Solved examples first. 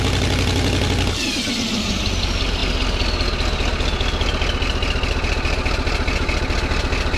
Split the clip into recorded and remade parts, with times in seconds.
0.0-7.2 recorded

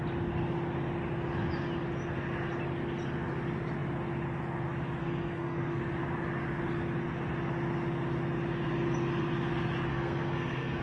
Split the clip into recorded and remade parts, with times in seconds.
0.0-5.0 recorded; 5.0-5.8 remade; 5.8-9.9 recorded; 9.9-10.8 remade